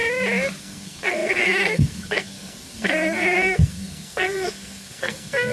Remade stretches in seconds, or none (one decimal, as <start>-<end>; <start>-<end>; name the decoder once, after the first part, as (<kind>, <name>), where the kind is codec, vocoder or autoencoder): 0.6-5.5 (codec, SNAC)